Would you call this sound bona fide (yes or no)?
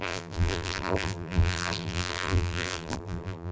no